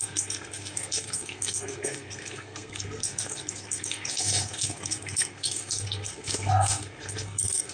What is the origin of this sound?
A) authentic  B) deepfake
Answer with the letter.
B